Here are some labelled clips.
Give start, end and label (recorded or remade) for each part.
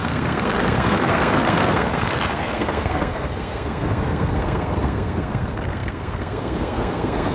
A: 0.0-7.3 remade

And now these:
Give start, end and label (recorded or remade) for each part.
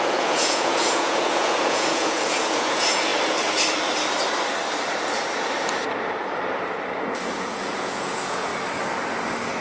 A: 0.0-3.1 remade; 3.1-7.3 recorded; 7.3-8.5 remade; 8.5-9.6 recorded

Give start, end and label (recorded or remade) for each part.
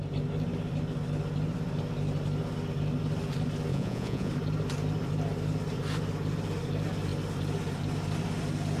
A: 0.0-3.7 recorded; 3.7-4.3 remade; 4.3-8.8 recorded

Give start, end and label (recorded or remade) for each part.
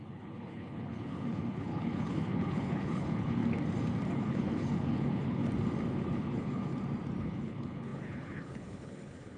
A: 0.0-3.4 remade; 3.4-4.1 recorded; 4.1-5.4 remade; 5.4-5.9 recorded; 5.9-6.7 remade; 6.7-7.2 recorded; 7.2-9.4 remade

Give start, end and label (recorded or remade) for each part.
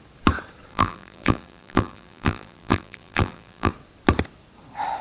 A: 0.0-0.7 recorded; 0.7-3.7 remade; 3.7-5.0 recorded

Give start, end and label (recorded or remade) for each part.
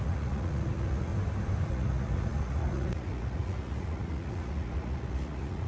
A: 0.0-1.1 remade; 1.1-1.7 recorded; 1.7-5.7 remade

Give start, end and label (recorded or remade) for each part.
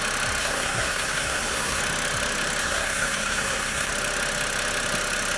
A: 0.0-0.4 recorded; 0.4-1.8 remade; 1.8-2.6 recorded; 2.6-3.9 remade; 3.9-5.4 recorded